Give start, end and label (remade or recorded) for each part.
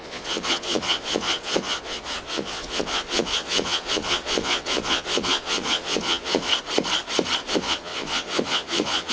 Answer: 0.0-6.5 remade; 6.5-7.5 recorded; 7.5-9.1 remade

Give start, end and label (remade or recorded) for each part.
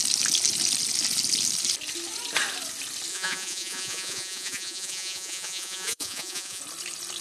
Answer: 0.0-3.1 recorded; 3.1-6.6 remade; 6.6-7.2 recorded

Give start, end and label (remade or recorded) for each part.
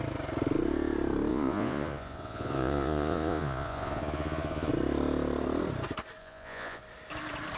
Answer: 0.0-1.3 recorded; 1.3-4.7 remade; 4.7-6.2 recorded; 6.2-6.8 remade; 6.8-7.6 recorded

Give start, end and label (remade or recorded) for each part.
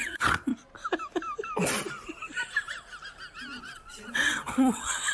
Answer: 0.0-0.5 remade; 0.5-3.6 recorded; 3.6-5.1 remade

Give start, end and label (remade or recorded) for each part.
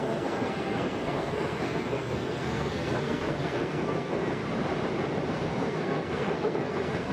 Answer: 0.0-4.4 remade; 4.4-5.3 recorded; 5.3-7.1 remade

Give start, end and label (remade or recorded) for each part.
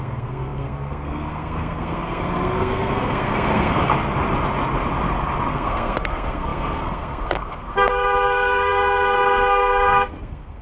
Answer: 0.0-3.9 remade; 3.9-5.5 recorded; 5.5-10.6 remade